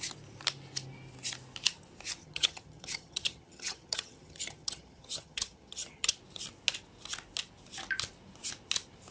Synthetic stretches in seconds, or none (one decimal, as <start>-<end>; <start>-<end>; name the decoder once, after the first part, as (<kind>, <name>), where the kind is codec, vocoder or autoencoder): 2.2-6.1 (vocoder, HiFi-GAN)